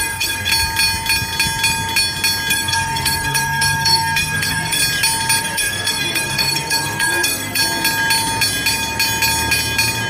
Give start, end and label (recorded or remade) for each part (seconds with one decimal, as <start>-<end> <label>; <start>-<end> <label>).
0.0-0.5 remade; 0.5-2.5 recorded; 2.5-4.8 remade; 4.8-5.4 recorded; 5.4-7.6 remade; 7.6-10.1 recorded